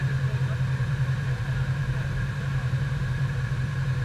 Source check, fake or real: fake